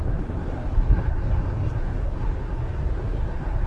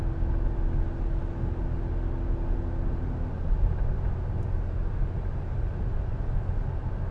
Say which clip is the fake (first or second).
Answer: first